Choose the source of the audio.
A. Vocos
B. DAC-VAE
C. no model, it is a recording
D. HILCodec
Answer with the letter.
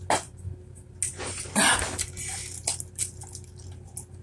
C